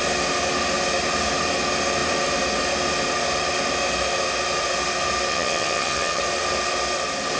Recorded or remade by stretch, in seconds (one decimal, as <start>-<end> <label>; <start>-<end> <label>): 0.0-5.3 recorded; 5.3-6.2 remade; 6.2-7.4 recorded